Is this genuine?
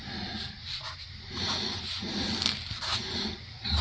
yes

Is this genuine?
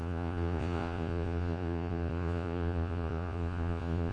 no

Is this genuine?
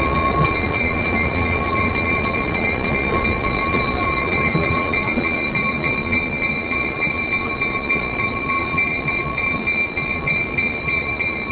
no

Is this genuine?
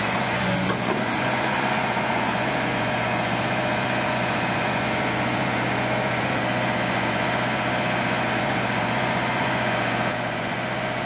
no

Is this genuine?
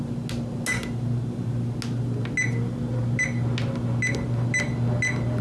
yes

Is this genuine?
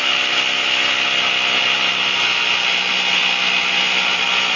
yes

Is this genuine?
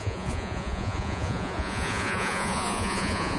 no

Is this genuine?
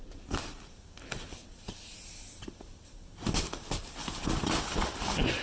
yes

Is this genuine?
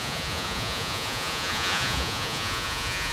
no